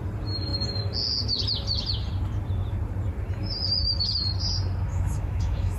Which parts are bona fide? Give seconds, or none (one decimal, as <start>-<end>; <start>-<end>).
0.0-4.9